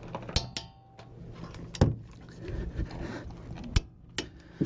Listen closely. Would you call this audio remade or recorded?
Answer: recorded